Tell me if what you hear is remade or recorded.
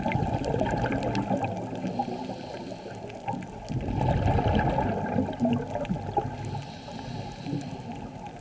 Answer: recorded